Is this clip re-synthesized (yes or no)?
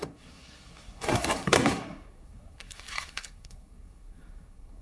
yes